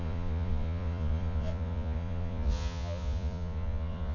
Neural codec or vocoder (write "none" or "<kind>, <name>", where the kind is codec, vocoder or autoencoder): vocoder, Vocos